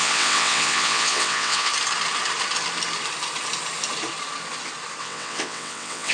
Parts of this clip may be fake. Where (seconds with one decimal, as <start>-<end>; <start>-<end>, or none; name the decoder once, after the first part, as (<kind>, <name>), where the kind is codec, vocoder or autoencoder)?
0.0-1.7 (vocoder, WaveNeXt); 5.0-6.1